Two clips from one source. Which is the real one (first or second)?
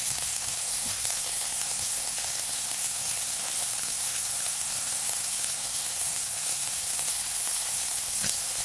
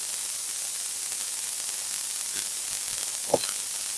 second